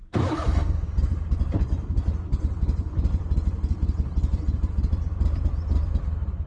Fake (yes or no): no